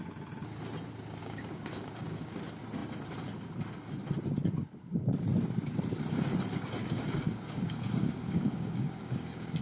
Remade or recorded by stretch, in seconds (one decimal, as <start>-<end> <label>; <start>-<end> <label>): 0.0-1.2 recorded; 1.2-2.4 remade; 2.4-6.8 recorded; 6.8-9.6 remade